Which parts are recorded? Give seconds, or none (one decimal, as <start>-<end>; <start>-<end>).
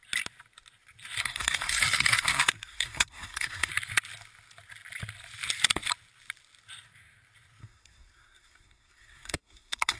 0.0-1.2; 3.7-7.6